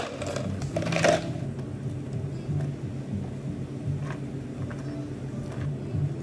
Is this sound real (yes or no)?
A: yes